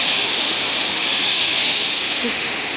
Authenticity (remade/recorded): remade